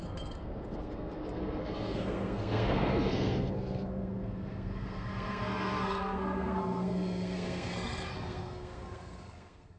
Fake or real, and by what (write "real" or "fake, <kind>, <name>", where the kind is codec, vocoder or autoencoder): fake, codec, SNAC